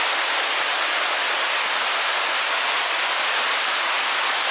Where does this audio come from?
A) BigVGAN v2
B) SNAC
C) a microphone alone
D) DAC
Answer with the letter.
C